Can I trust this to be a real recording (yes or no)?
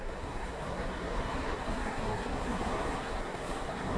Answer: no